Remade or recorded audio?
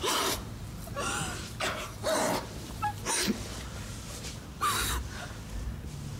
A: recorded